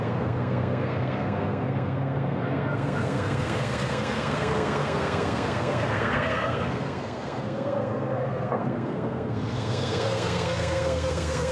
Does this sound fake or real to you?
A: fake